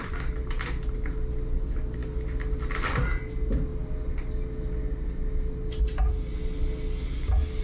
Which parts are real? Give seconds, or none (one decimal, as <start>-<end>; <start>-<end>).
0.0-7.6